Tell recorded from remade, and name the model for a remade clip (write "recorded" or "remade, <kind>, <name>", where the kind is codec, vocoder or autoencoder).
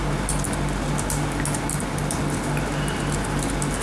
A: recorded